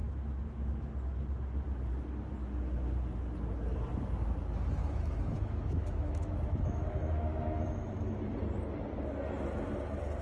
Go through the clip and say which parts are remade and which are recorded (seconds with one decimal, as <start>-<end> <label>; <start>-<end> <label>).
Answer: 0.0-0.9 remade; 0.9-4.8 recorded; 4.8-8.1 remade; 8.1-10.2 recorded

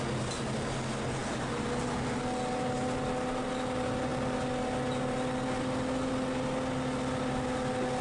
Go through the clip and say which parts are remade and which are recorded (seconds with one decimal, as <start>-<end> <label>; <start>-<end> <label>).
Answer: 0.0-8.0 recorded

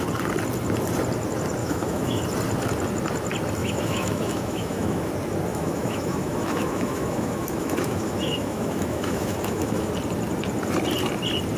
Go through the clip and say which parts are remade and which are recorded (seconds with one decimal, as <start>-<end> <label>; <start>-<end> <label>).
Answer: 0.0-1.6 recorded; 1.6-2.2 remade; 2.2-3.6 recorded; 3.6-5.1 remade; 5.1-5.5 recorded; 5.5-9.9 remade; 9.9-11.6 recorded